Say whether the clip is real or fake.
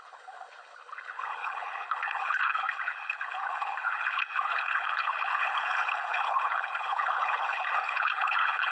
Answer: fake